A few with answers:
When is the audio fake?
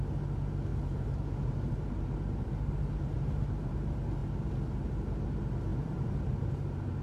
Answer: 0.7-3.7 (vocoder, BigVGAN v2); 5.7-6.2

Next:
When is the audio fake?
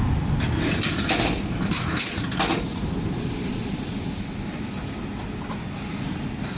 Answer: 2.7-4.2 (vocoder, BigVGAN v2)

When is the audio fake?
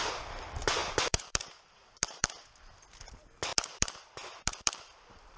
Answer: 0.8-2.3 (vocoder, BigVGAN v2); 3.5-5.4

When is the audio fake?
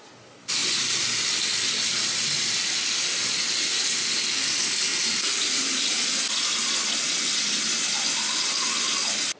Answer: 0.6-1.4 (vocoder, BigVGAN v2); 4.9-5.7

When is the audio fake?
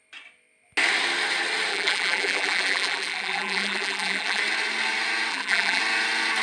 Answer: 1.7-4.4 (vocoder, BigVGAN v2); 5.3-5.8